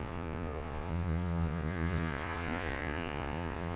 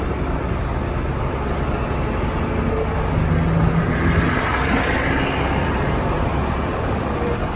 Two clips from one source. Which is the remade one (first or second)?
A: first